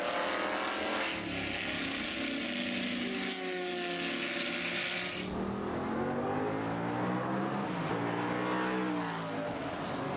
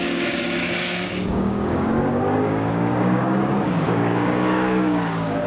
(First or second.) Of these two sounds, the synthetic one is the second